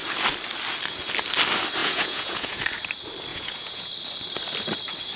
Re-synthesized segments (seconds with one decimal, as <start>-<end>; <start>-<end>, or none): 1.8-2.6; 3.3-3.9